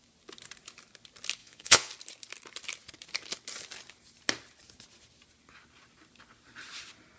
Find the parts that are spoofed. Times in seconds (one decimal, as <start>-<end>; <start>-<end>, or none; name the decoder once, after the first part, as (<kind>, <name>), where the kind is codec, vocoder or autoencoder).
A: 1.4-1.9 (vocoder, Vocos)